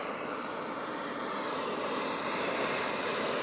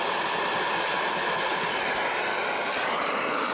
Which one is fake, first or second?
first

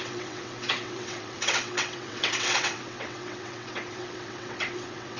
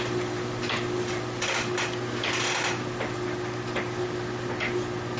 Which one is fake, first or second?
first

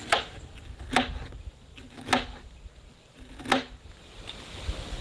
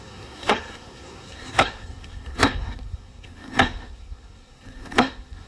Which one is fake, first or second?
second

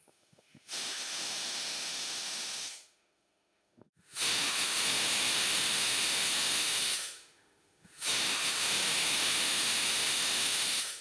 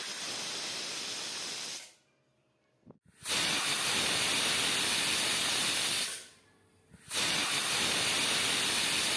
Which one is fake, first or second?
first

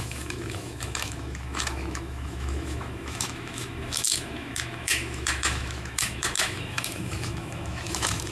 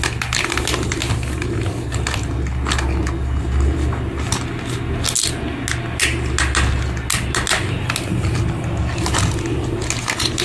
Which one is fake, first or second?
first